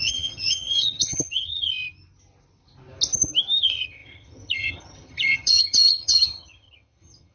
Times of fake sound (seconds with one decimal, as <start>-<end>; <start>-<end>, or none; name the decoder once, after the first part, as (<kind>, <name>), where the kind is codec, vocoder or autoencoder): 0.0-1.7 (vocoder, HiFi-GAN); 3.6-7.3